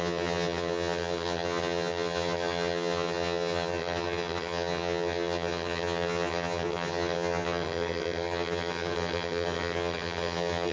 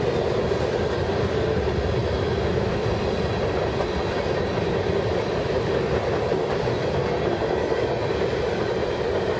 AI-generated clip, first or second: first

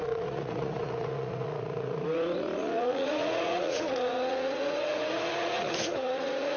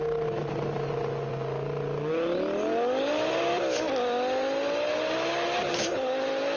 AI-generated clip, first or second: first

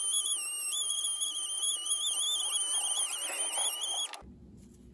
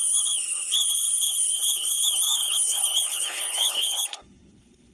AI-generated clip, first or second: second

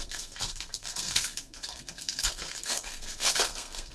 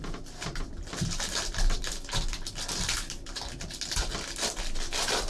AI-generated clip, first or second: first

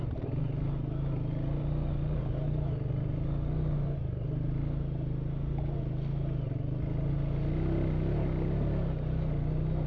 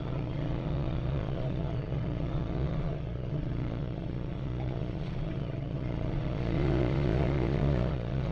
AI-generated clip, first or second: second